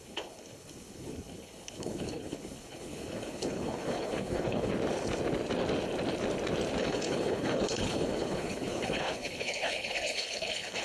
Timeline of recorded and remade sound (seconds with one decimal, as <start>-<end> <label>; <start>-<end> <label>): 0.0-4.7 remade; 4.7-6.8 recorded; 6.8-10.8 remade